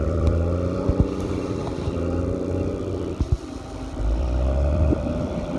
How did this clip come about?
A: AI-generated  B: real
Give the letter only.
A